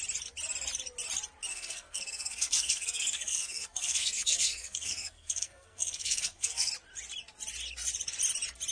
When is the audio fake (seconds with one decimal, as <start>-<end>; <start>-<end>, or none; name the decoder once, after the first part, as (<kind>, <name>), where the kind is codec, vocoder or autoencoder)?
1.5-6.7 (codec, SNAC)